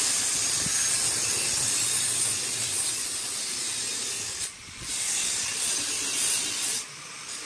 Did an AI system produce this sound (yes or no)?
no